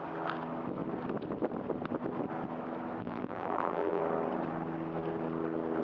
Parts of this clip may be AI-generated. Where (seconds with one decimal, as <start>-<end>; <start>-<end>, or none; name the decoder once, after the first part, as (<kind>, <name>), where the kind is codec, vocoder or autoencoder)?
3.0-4.0 (vocoder, BigVGAN v2)